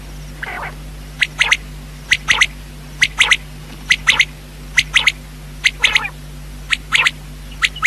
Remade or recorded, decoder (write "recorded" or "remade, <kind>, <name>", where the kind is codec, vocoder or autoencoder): recorded